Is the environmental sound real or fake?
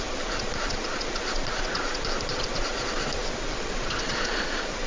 fake